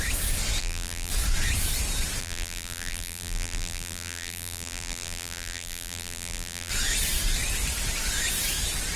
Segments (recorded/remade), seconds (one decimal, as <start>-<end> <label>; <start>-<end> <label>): 0.0-0.6 recorded; 0.6-1.1 remade; 1.1-2.2 recorded; 2.2-6.7 remade; 6.7-9.0 recorded